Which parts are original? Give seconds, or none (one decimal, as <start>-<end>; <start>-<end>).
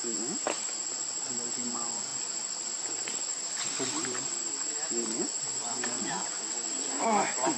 0.0-3.3; 4.4-7.6